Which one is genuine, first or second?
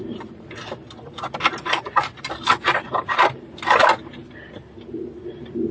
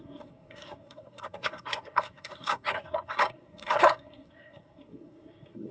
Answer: first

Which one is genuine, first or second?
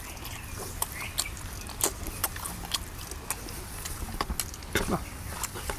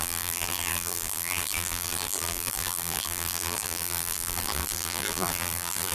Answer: first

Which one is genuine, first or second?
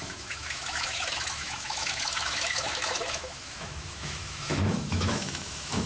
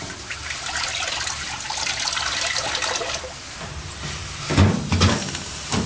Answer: second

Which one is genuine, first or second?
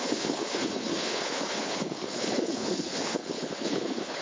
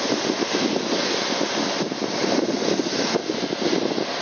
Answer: second